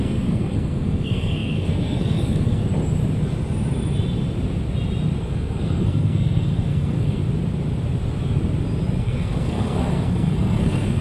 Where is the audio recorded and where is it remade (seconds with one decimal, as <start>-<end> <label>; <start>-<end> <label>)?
0.0-2.6 remade; 2.6-5.2 recorded; 5.2-7.2 remade; 7.2-9.0 recorded; 9.0-11.0 remade